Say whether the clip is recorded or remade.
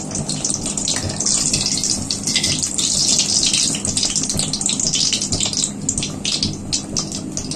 recorded